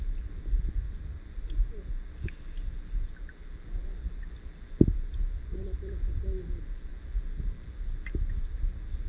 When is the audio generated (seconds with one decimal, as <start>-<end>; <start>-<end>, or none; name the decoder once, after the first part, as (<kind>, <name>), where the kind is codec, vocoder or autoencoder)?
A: 0.8-1.9 (vocoder, BigVGAN v2)